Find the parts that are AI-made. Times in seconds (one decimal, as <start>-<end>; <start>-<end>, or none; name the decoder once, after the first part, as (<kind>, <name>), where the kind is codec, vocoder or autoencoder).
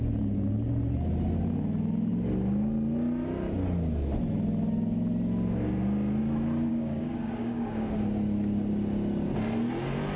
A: 6.7-8.0 (codec, DAC)